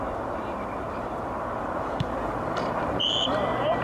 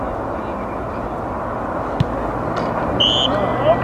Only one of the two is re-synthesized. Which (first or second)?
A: first